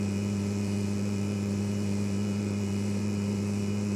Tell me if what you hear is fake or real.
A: fake